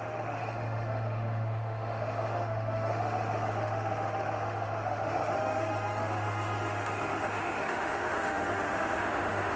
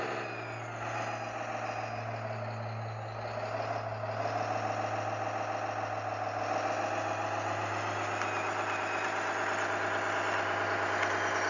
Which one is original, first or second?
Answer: second